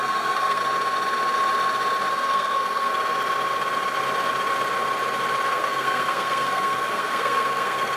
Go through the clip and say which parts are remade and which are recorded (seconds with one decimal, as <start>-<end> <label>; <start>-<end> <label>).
0.0-0.6 remade; 0.6-2.1 recorded; 2.1-2.9 remade; 2.9-5.5 recorded; 5.5-8.0 remade